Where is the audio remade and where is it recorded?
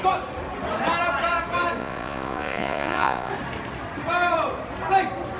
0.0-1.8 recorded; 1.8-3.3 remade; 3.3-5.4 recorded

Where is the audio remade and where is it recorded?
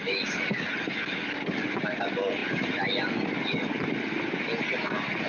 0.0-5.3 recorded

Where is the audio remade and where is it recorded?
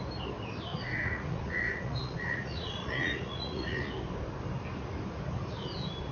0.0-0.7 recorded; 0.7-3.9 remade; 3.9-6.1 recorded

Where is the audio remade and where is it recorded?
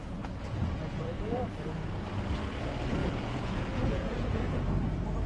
0.0-1.4 remade; 1.4-3.0 recorded; 3.0-4.6 remade; 4.6-5.3 recorded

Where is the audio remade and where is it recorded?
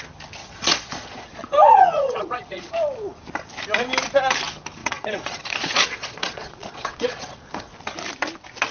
0.0-0.4 recorded; 0.4-2.7 remade; 2.7-4.8 recorded; 4.8-7.7 remade; 7.7-8.7 recorded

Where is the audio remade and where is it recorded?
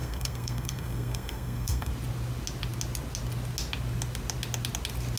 0.0-1.9 remade; 1.9-5.2 recorded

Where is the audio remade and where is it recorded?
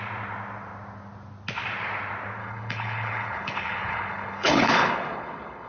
0.0-2.4 recorded; 2.4-5.7 remade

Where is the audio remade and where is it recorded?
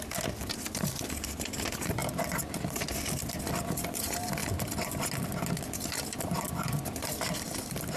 0.0-2.0 remade; 2.0-3.2 recorded; 3.2-4.4 remade; 4.4-6.2 recorded; 6.2-8.0 remade